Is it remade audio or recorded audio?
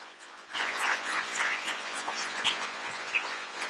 remade